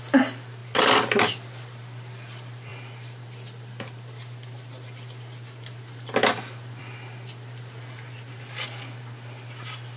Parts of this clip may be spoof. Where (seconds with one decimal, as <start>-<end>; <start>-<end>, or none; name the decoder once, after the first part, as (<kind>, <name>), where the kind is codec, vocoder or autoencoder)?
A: none